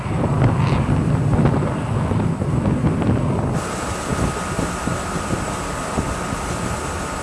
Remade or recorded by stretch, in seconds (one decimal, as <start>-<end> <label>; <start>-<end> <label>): 0.0-7.2 recorded